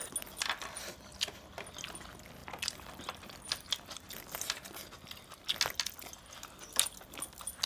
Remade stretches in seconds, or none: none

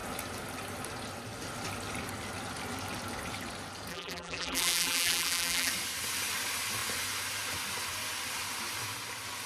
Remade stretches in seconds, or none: 3.9-5.7 (vocoder, BigVGAN v2)